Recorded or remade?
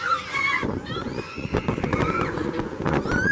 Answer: remade